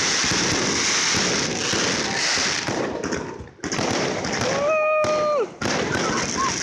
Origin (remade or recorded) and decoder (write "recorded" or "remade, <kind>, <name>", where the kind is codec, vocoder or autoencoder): recorded